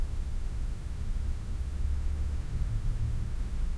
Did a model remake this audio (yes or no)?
yes